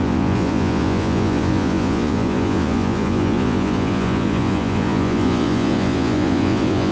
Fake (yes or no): yes